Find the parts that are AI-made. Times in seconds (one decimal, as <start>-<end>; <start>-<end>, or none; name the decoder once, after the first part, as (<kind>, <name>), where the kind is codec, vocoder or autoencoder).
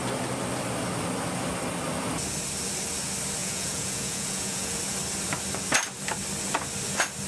3.4-4.8 (vocoder, Vocos)